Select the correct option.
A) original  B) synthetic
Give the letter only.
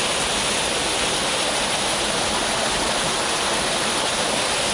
A